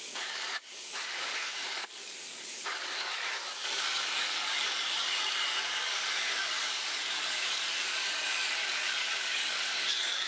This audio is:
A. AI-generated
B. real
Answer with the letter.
A